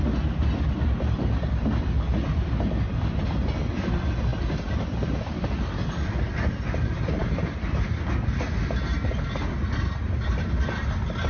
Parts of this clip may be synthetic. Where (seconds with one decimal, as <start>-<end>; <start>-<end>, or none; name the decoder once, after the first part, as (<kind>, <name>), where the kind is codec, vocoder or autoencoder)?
none